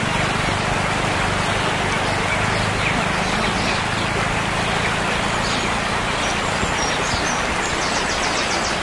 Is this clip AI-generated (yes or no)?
no